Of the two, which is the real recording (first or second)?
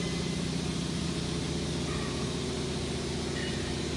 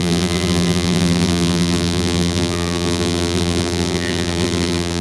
first